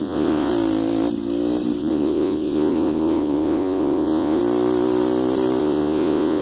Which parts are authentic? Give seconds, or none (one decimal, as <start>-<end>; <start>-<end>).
0.5-1.8; 4.4-5.6